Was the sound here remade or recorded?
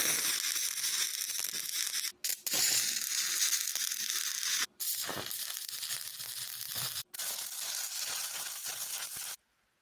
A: recorded